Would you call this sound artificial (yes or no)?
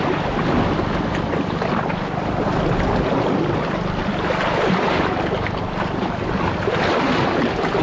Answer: no